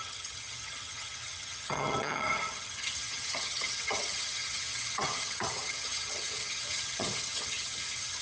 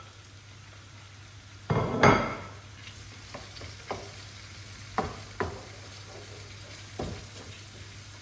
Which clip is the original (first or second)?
second